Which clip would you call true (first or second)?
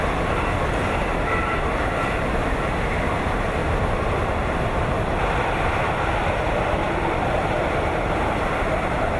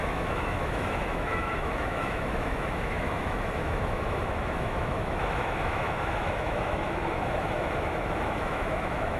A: first